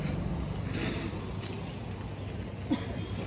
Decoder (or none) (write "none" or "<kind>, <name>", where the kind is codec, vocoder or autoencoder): none